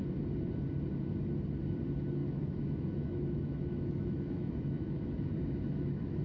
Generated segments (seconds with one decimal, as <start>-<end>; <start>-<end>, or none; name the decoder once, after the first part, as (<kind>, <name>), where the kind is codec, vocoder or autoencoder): 2.2-6.2 (autoencoder, DAC-VAE)